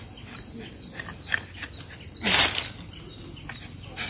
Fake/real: real